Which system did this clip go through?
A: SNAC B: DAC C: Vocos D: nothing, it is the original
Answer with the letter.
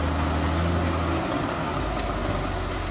D